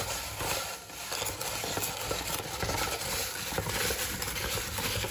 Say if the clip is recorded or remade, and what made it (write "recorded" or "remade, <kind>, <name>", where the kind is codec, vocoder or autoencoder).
recorded